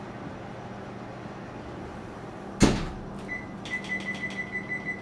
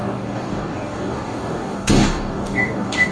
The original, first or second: first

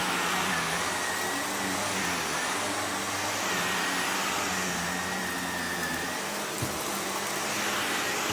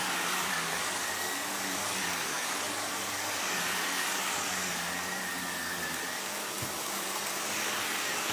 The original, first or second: first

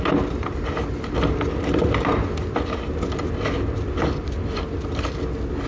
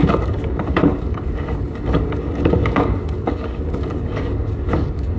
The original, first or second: first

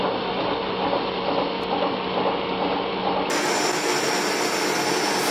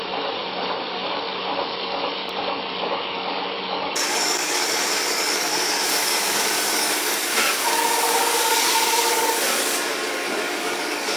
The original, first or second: first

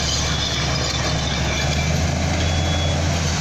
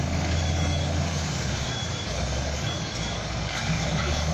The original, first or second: first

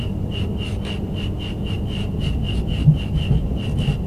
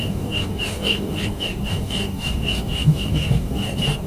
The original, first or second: first